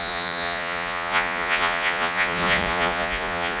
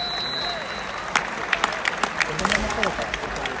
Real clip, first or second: second